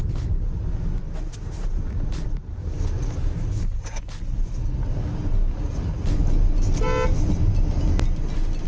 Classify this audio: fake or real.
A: real